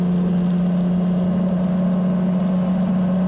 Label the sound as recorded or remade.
recorded